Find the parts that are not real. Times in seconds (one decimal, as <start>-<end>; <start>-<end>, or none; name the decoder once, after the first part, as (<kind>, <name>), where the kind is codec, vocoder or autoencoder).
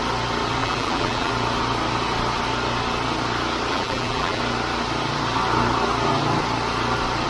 0.6-1.3 (vocoder, BigVGAN v2); 3.7-4.4